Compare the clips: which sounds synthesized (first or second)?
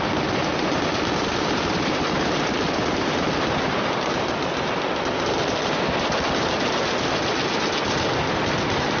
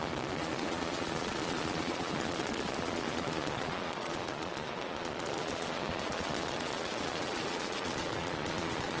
second